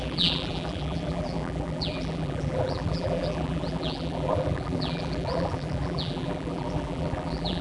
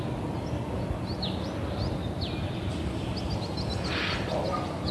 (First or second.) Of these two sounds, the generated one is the first